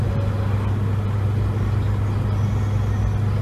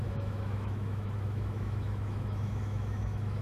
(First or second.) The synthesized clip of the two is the second